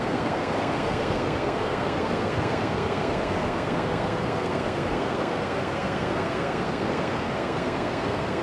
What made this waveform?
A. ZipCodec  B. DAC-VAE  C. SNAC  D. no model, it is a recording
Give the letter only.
C